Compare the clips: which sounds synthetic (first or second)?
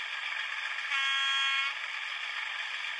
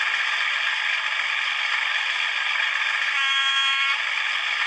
second